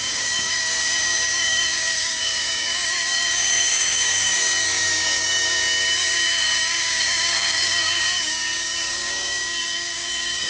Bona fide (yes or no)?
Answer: no